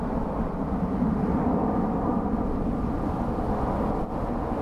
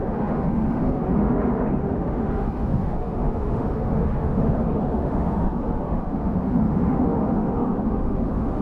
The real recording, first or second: first